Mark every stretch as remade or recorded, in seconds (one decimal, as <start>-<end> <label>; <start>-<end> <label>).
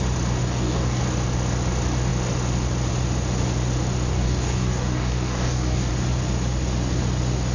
0.0-0.4 recorded; 0.4-1.0 remade; 1.0-4.1 recorded; 4.1-5.9 remade; 5.9-7.5 recorded